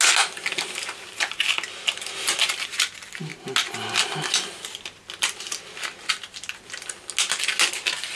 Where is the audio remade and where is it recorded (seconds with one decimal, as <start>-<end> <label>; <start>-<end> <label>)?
0.0-8.1 recorded